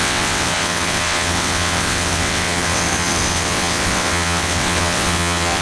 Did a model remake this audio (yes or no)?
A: yes